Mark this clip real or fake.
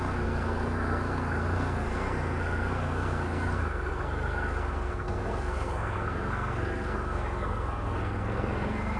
fake